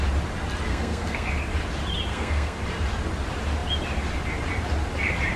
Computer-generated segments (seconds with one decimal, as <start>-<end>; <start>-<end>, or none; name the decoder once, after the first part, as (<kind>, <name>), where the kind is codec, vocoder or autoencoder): 0.7-1.3 (codec, SNAC); 2.1-2.6